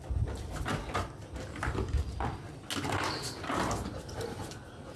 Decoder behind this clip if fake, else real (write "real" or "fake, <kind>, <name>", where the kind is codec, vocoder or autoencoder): real